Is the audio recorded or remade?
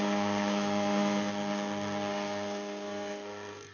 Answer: remade